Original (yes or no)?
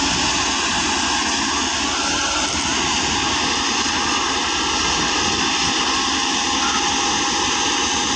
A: yes